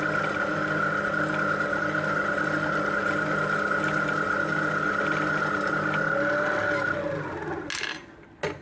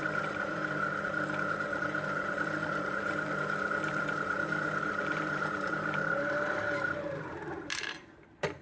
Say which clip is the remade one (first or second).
second